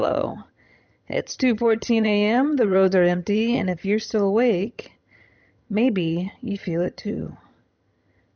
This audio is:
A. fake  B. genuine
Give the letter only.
A